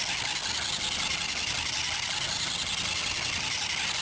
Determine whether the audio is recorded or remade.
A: recorded